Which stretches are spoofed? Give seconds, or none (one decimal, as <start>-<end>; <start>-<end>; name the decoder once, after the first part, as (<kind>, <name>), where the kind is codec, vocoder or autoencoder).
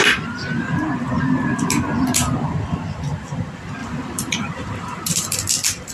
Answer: 3.8-5.5 (vocoder, BigVGAN v2)